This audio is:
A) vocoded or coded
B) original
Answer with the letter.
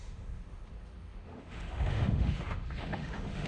A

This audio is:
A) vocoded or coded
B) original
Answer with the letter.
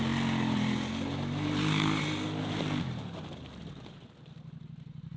B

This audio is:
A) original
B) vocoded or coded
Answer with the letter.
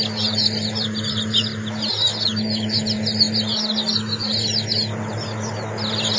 A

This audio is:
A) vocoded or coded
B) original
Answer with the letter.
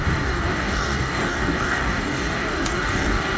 A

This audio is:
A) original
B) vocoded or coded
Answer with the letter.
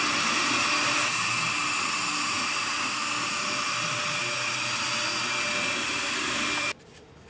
A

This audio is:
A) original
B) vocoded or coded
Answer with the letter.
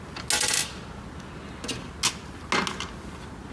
A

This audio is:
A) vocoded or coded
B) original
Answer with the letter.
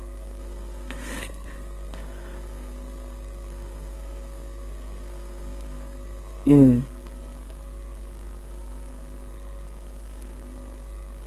A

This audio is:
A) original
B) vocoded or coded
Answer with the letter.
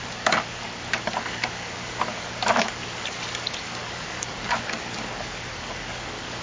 B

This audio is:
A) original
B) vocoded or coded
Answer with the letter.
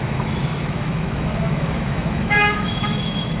B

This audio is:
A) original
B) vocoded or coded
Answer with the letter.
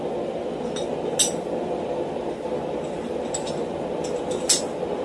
A